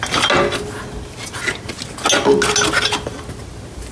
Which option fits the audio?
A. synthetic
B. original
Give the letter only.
B